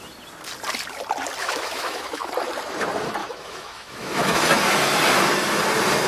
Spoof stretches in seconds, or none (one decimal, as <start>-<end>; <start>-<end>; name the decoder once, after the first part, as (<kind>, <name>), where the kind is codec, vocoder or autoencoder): 1.4-2.3 (autoencoder, DAC-VAE); 3.2-4.4